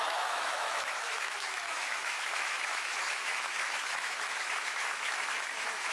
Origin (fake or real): fake